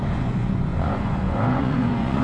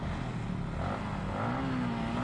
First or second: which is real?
second